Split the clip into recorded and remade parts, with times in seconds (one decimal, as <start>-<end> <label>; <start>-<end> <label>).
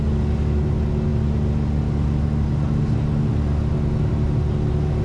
0.0-5.0 recorded